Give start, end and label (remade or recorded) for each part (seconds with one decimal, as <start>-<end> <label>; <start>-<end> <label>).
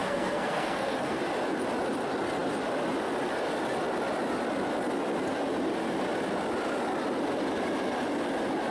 0.0-1.2 remade; 1.2-8.7 recorded